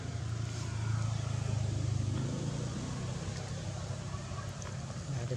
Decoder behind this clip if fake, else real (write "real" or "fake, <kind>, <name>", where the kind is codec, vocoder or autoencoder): real